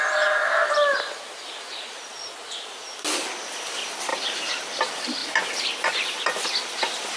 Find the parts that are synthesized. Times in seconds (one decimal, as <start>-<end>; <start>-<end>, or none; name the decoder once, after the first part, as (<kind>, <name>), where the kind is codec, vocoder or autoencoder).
4.1-4.7 (vocoder, BigVGAN v2); 5.2-5.9